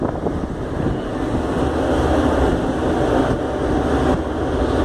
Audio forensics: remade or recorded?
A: recorded